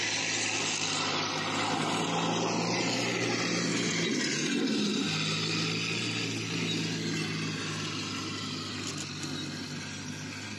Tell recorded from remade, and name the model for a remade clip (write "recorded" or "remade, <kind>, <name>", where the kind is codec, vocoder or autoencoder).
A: recorded